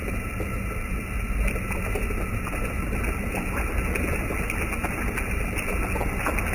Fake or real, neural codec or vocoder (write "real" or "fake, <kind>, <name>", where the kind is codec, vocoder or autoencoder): real